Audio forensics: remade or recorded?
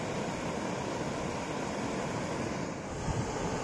recorded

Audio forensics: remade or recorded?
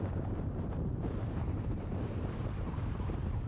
remade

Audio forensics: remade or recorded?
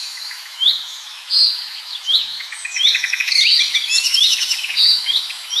remade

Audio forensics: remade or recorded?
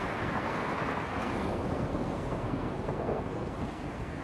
remade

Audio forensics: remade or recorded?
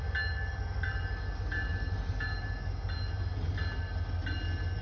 recorded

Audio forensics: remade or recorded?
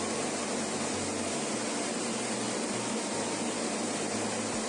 recorded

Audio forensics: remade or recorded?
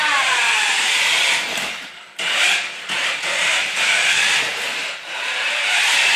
remade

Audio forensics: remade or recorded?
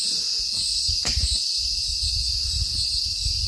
recorded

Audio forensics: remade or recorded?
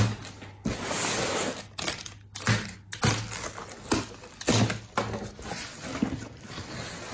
recorded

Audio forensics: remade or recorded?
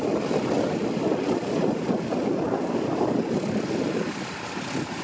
recorded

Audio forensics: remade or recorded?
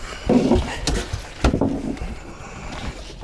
recorded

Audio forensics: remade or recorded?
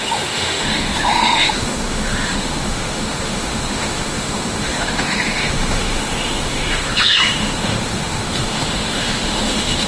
remade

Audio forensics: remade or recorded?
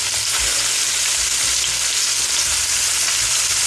recorded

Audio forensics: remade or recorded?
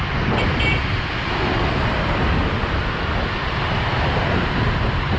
recorded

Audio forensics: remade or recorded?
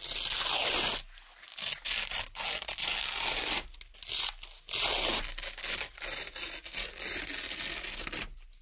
recorded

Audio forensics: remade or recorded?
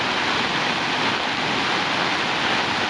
recorded